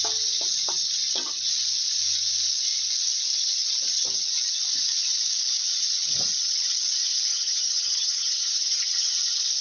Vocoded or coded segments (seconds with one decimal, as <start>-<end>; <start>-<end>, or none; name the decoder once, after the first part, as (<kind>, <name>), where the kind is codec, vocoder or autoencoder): 7.3-9.1 (vocoder, HiFi-GAN)